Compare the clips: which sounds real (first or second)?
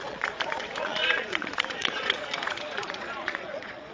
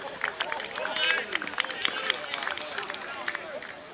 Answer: second